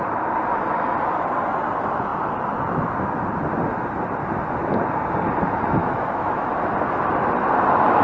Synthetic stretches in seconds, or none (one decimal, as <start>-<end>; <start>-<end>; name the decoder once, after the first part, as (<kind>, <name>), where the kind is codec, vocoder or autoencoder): 5.8-6.5 (autoencoder, DAC-VAE)